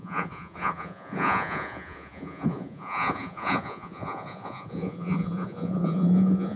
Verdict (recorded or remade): remade